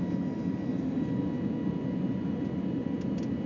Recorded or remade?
recorded